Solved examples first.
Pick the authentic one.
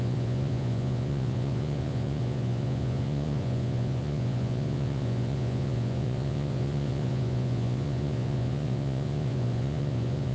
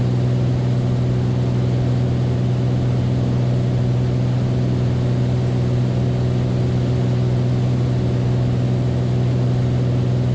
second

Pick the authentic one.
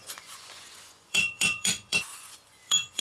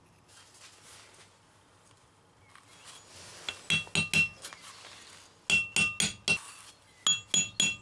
second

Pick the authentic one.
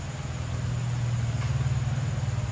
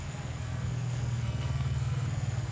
first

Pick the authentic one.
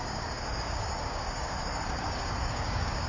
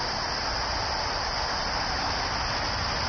second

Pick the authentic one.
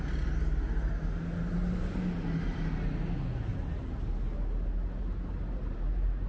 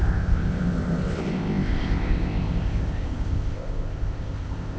first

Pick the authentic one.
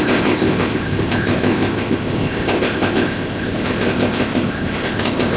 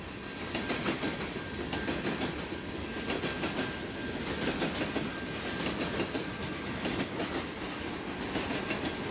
second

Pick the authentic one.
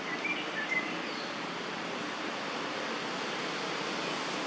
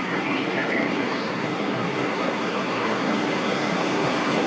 first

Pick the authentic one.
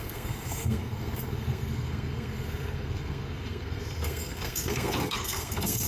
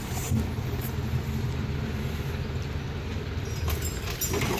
second